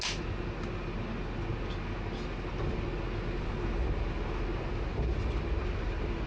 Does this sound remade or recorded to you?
recorded